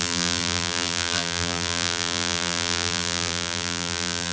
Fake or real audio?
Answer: fake